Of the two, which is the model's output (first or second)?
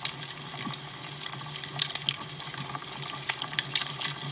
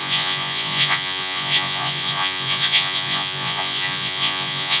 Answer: second